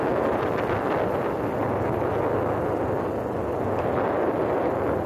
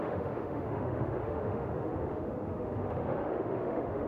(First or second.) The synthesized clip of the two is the second